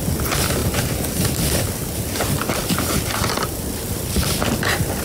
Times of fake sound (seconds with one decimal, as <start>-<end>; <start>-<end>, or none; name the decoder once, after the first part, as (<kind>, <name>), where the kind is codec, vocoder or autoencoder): none